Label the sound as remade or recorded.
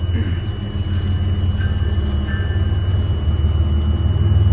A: recorded